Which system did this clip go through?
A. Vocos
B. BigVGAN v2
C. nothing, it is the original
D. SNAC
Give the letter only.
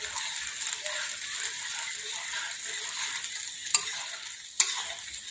C